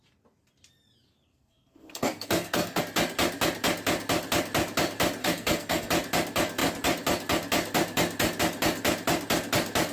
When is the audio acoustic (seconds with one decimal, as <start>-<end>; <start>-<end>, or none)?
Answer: 0.0-1.3; 2.8-5.2; 5.9-9.9